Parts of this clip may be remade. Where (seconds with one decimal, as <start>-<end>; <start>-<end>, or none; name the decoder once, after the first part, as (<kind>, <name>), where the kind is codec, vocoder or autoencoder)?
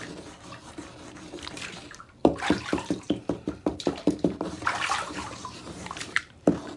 2.2-6.3 (vocoder, BigVGAN v2)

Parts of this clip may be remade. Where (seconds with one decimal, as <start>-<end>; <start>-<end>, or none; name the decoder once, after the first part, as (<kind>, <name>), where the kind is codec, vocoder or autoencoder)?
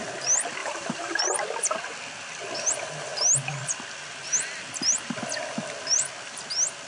0.6-1.2 (vocoder, BigVGAN v2)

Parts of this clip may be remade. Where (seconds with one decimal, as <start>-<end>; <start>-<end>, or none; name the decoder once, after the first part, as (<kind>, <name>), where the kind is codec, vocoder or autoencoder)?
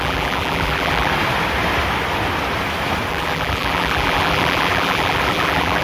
0.0-1.1 (vocoder, BigVGAN v2); 3.1-5.8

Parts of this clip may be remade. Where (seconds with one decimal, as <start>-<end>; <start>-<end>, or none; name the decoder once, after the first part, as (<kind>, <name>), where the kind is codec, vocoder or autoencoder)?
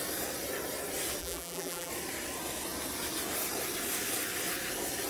1.2-1.9 (vocoder, BigVGAN v2)